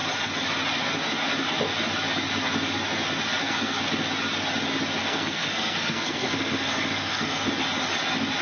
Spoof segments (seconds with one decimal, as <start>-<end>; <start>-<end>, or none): 3.4-3.9; 5.0-7.5